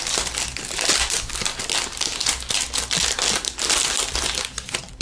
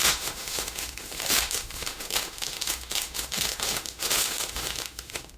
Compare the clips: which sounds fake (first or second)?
second